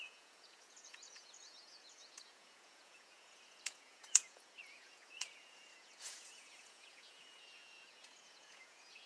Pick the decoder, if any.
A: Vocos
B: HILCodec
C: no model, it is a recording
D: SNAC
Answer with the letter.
A